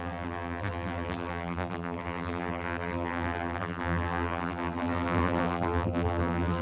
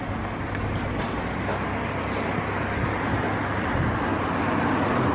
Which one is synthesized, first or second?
first